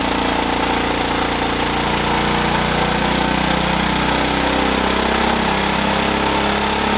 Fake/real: real